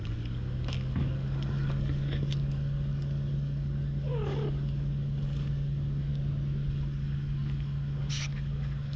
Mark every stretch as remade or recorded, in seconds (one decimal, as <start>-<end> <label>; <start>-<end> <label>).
0.0-6.1 remade; 6.1-6.7 recorded; 6.7-9.0 remade